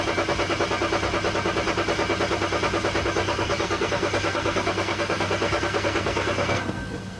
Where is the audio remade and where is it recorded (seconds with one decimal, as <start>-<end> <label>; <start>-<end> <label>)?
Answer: 0.0-3.2 recorded; 3.2-7.2 remade